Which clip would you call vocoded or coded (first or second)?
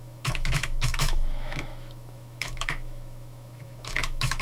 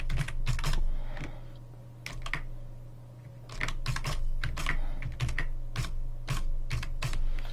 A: first